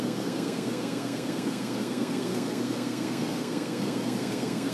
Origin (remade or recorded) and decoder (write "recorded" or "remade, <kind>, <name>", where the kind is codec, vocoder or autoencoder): remade, codec, SNAC